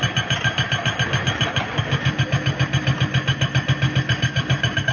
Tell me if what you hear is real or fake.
real